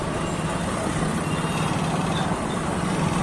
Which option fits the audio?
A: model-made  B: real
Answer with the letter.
B